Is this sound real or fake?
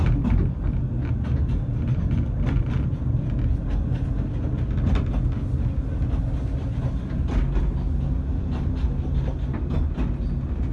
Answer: real